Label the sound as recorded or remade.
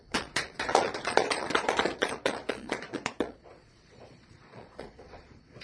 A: remade